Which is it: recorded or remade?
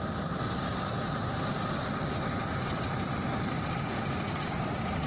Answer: recorded